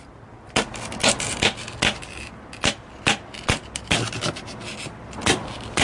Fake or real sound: real